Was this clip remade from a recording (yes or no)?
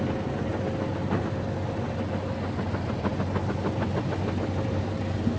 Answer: no